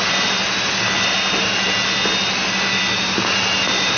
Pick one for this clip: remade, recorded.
recorded